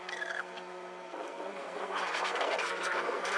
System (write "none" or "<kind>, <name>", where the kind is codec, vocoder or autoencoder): codec, SNAC